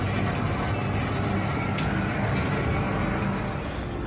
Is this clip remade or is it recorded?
recorded